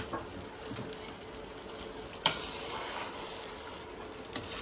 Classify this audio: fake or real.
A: real